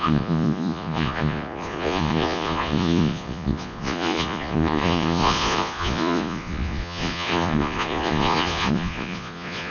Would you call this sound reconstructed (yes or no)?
yes